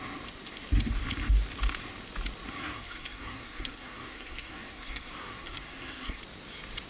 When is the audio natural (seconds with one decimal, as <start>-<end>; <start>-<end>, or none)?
0.0-2.6; 6.2-6.9

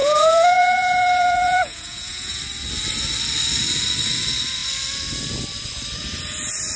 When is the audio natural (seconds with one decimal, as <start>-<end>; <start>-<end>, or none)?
2.4-6.8

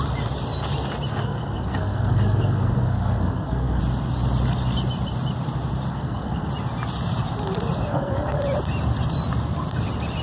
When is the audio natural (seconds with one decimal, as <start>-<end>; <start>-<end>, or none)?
0.0-1.1; 3.8-5.9; 6.5-7.9; 8.4-10.2